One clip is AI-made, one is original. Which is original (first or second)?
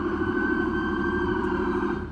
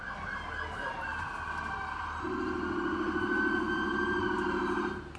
second